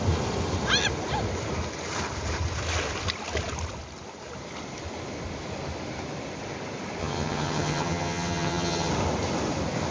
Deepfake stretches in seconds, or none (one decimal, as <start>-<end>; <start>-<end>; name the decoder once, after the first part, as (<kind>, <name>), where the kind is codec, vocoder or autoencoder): 7.0-8.9 (vocoder, HiFi-GAN)